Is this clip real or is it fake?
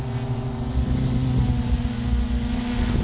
real